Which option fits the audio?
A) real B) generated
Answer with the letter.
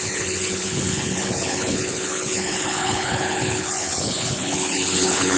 B